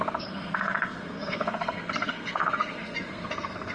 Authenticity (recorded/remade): remade